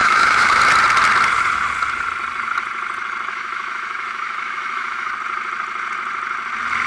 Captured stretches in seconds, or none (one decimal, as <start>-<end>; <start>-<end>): 0.6-3.3; 5.1-6.9